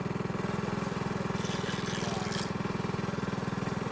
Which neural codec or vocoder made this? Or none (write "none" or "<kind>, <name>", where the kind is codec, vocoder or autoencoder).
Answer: none